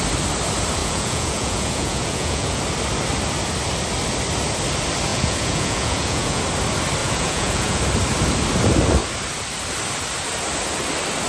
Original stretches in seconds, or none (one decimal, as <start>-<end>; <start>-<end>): 0.0-0.8; 2.6-5.1; 6.4-7.0; 7.8-11.3

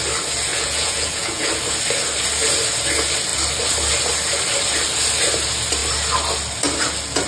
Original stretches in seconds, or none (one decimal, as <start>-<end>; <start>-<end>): 0.0-0.5; 1.5-7.3

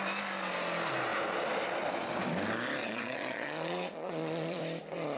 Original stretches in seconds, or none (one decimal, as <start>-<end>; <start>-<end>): 0.0-2.8; 4.6-5.2

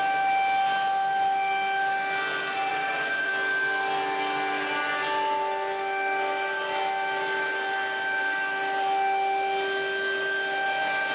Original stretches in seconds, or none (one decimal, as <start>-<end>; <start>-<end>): 0.0-2.7; 3.3-11.1

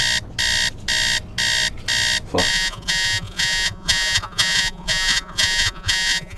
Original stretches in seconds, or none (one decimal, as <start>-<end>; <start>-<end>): 0.0-2.5

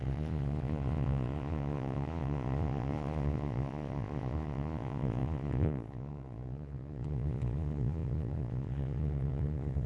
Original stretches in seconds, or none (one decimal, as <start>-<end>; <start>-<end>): none

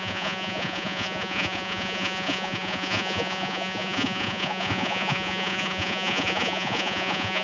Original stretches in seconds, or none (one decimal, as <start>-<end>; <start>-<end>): none

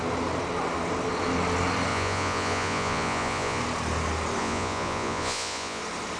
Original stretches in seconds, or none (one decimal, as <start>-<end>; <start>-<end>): 0.0-1.9; 3.6-4.4; 5.8-6.2